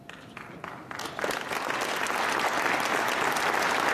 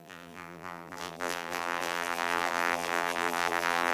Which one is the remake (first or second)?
second